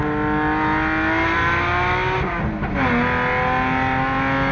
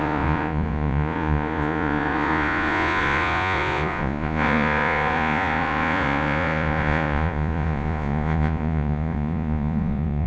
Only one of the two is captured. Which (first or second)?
first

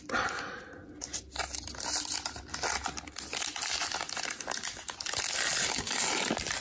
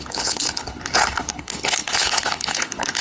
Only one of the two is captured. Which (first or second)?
first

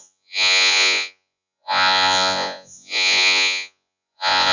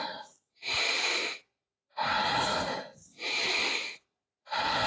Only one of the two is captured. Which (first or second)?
second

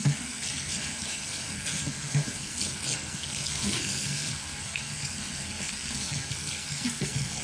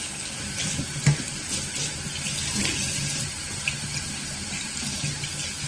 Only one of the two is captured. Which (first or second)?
second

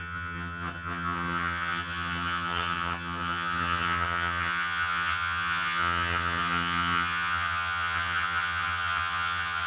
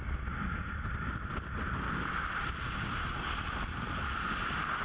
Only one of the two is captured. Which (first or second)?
second